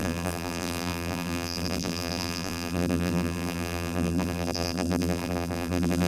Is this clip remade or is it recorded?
remade